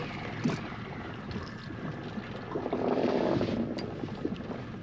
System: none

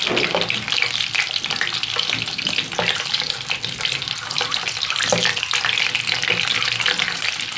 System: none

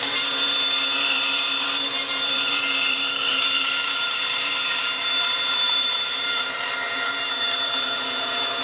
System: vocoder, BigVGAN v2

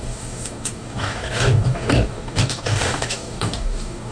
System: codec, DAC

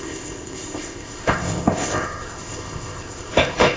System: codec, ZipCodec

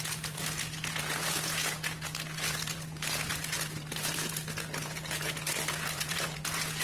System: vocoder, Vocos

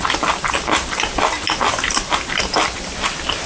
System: none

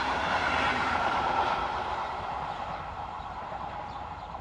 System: vocoder, BigVGAN v2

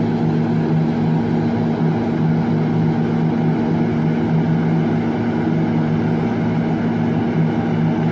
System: none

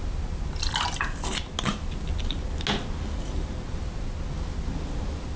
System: none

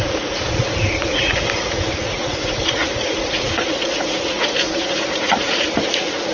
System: vocoder, Vocos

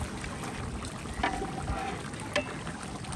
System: none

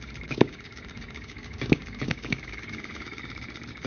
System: codec, DAC